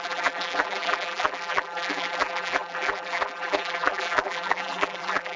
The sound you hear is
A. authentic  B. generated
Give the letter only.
B